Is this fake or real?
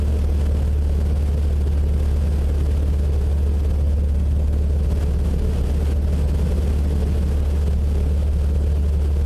real